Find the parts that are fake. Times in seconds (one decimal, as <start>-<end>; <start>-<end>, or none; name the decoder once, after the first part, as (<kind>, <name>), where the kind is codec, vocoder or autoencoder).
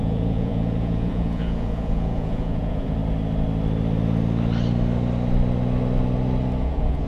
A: 0.0-3.0 (vocoder, Vocos); 6.6-7.1